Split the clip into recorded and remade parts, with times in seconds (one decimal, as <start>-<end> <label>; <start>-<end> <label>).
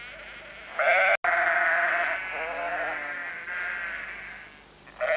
0.0-5.2 recorded